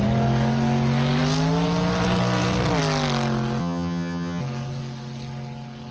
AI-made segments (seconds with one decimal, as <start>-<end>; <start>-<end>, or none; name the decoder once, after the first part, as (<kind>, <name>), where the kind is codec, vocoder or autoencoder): 3.6-4.4 (vocoder, HiFi-GAN)